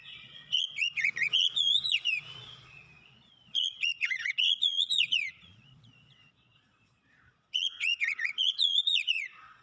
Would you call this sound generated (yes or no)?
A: yes